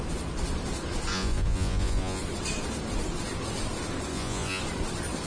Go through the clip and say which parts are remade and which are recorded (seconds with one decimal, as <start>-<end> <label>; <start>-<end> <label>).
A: 0.0-1.1 recorded; 1.1-2.2 remade; 2.2-4.1 recorded; 4.1-4.6 remade; 4.6-5.3 recorded